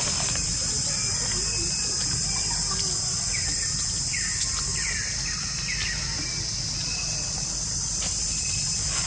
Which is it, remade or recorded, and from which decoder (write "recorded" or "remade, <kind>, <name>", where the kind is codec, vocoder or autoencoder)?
recorded